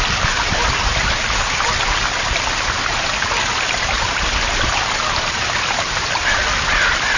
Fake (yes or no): no